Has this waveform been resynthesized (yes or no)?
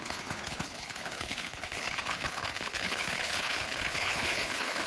yes